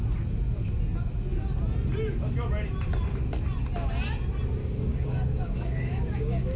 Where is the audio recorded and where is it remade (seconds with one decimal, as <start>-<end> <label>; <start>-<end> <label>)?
0.0-4.6 recorded; 4.6-6.6 remade